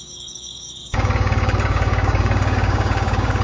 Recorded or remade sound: remade